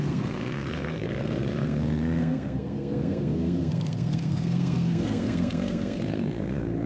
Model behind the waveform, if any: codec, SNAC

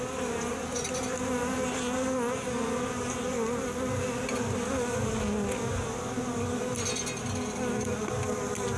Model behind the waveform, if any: none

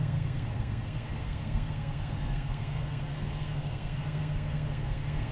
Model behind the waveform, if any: codec, SNAC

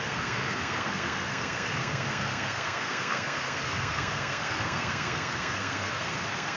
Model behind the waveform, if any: codec, SNAC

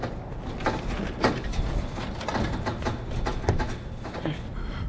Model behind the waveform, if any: none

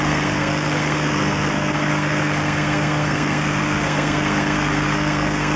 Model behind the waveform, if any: codec, SNAC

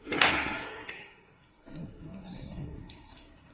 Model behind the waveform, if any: codec, SNAC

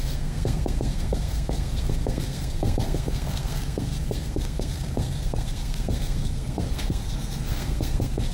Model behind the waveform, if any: codec, SNAC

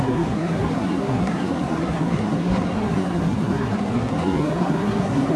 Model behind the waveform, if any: codec, SNAC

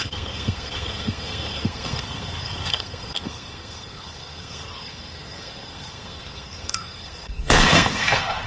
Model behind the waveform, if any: codec, SNAC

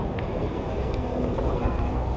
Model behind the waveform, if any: codec, SNAC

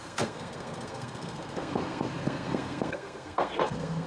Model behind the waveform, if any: codec, SNAC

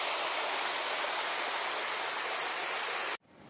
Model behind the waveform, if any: none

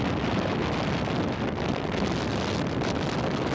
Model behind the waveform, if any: none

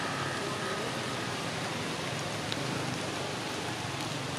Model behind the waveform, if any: none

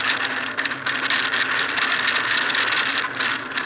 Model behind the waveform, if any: none